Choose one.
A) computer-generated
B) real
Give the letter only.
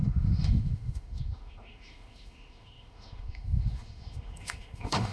A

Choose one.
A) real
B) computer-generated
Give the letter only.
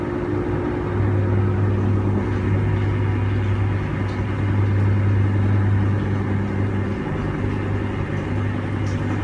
A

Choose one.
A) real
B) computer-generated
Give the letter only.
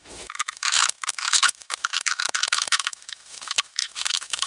B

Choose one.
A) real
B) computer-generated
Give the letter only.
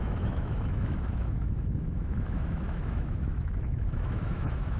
B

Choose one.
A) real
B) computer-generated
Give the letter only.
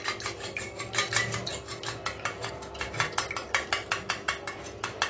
A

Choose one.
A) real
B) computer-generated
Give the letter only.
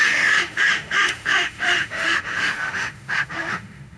B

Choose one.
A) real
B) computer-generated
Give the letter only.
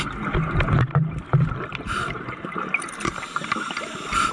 A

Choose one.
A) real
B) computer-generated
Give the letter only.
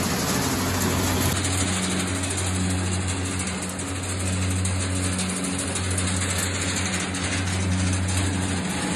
A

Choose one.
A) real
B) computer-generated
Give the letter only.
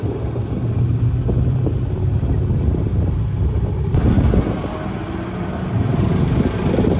A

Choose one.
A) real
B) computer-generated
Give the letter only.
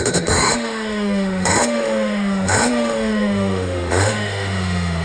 B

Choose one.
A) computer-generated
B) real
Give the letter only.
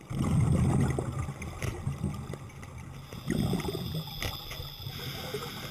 B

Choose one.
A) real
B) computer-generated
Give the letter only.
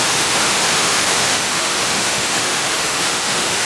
B